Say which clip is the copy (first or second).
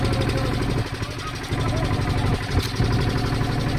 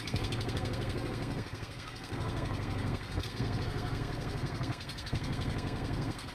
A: second